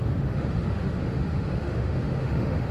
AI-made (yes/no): yes